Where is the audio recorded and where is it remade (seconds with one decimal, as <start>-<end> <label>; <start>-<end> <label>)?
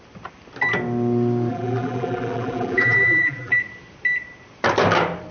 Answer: 0.0-1.5 recorded; 1.5-3.6 remade; 3.6-5.3 recorded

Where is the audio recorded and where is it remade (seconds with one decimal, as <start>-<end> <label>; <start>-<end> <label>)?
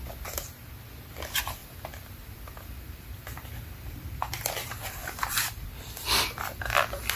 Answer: 0.0-1.6 recorded; 1.6-4.5 remade; 4.5-5.0 recorded; 5.0-6.6 remade; 6.6-7.2 recorded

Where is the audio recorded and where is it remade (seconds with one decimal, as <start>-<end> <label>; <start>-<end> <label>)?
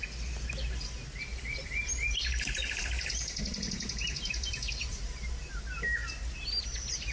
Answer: 0.0-1.3 recorded; 1.3-5.6 remade; 5.6-7.1 recorded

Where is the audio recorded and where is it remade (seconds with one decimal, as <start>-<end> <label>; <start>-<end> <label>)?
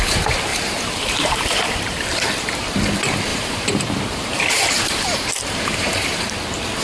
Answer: 0.0-0.5 recorded; 0.5-2.3 remade; 2.3-3.3 recorded; 3.3-6.3 remade; 6.3-6.8 recorded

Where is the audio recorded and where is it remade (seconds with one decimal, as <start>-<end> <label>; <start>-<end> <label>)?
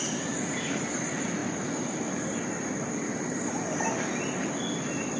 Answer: 0.0-5.2 recorded